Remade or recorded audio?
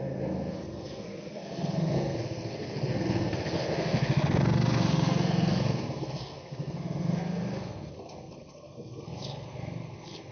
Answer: remade